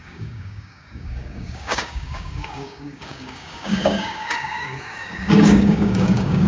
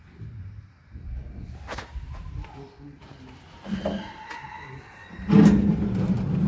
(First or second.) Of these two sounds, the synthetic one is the first